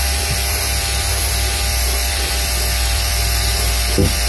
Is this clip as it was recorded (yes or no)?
no